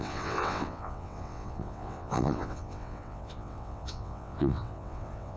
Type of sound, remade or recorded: remade